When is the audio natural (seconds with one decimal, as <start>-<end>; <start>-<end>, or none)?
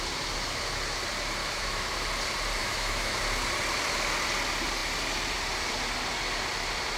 0.0-1.4; 1.9-2.6; 3.2-7.0